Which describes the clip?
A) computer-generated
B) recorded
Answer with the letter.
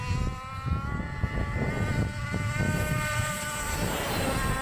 B